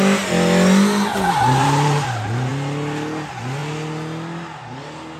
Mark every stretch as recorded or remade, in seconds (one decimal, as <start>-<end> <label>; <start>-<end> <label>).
0.0-1.1 recorded; 1.1-2.5 remade; 2.5-5.2 recorded